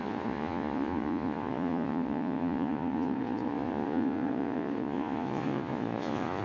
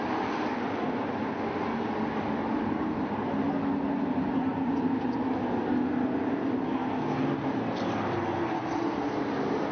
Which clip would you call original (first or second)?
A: second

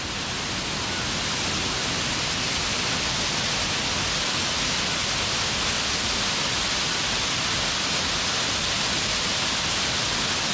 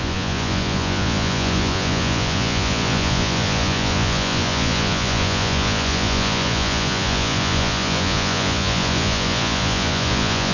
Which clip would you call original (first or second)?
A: first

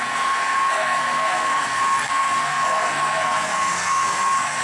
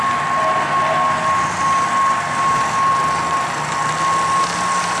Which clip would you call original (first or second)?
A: second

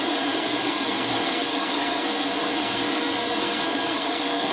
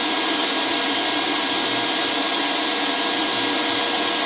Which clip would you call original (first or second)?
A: second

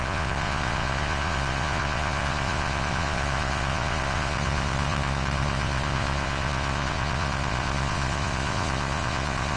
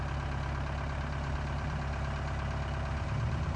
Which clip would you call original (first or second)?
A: second